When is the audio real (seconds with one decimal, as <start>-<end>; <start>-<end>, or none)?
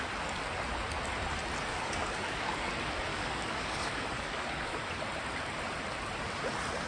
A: 0.0-1.7; 2.7-3.1; 4.8-6.9